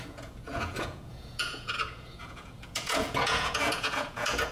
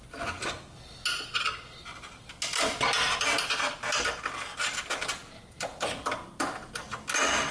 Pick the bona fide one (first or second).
second